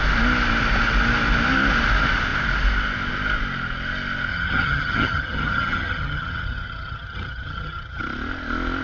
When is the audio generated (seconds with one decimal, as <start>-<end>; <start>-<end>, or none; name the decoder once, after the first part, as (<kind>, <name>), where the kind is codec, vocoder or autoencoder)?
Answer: 4.3-8.0 (vocoder, HiFi-GAN)